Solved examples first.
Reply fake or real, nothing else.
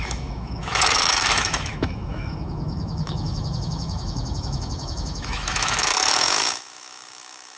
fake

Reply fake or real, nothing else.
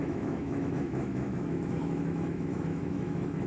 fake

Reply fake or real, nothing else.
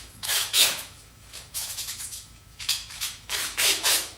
fake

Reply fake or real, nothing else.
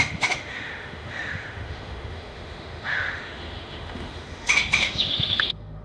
fake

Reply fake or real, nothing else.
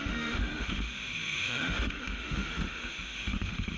fake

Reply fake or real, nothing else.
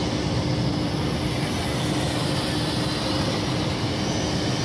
real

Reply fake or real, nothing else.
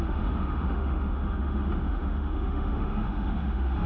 fake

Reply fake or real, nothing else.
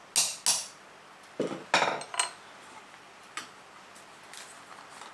real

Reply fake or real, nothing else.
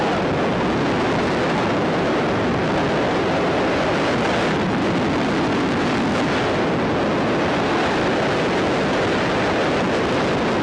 real